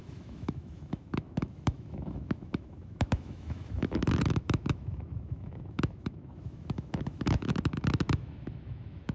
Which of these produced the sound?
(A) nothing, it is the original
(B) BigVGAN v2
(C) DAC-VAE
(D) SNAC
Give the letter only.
C